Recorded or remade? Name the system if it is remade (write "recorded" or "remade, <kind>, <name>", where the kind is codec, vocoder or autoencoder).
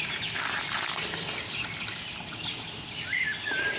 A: recorded